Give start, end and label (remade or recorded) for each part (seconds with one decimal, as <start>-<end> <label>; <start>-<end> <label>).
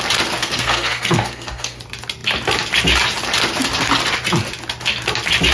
0.0-0.4 recorded; 0.4-1.8 remade; 1.8-5.5 recorded